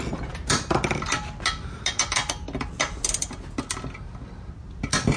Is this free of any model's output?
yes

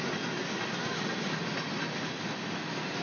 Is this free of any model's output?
yes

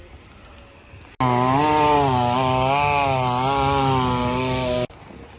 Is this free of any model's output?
yes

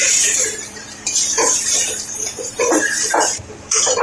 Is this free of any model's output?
no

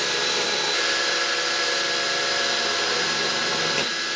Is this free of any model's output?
no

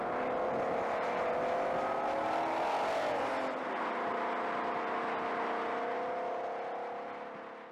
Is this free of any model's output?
yes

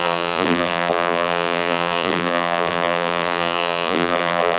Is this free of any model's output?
no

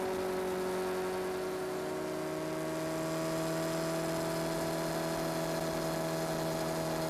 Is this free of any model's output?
yes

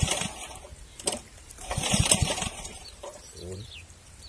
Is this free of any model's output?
no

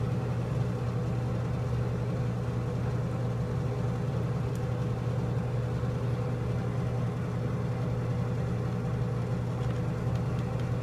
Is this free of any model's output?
yes